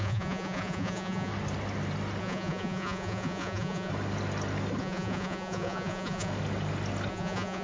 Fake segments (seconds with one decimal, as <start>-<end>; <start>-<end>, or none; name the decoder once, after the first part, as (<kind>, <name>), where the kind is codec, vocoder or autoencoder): 0.0-1.3 (vocoder, Vocos); 2.2-3.9; 4.8-6.3; 7.1-7.6